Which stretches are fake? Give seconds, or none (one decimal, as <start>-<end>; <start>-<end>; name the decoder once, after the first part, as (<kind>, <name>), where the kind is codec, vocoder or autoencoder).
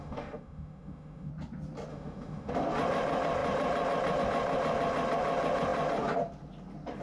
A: 0.0-1.3 (autoencoder, DAC-VAE); 1.9-2.5